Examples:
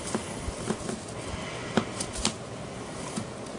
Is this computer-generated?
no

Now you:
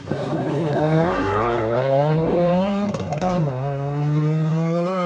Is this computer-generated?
yes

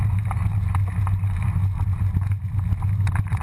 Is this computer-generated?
no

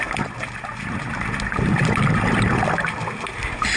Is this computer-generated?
no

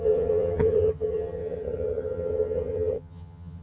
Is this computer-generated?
yes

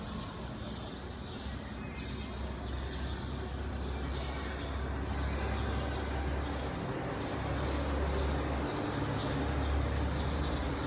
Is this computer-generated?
no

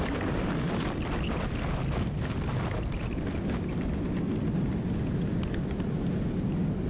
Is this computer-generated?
no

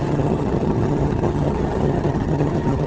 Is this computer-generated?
yes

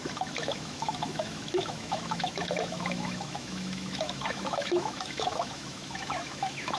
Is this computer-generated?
yes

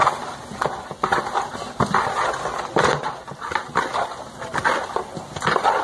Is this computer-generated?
no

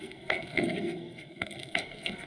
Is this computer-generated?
yes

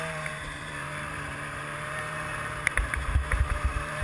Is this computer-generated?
yes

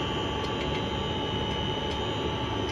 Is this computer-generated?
no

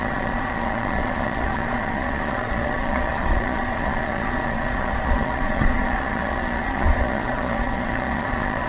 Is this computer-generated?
yes